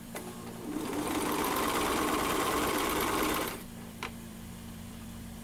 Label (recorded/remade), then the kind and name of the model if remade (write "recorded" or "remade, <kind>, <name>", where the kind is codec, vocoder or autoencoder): remade, vocoder, BigVGAN v2